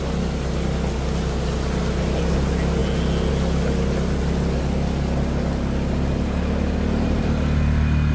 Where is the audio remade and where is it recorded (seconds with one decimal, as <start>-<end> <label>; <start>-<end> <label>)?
0.0-8.1 recorded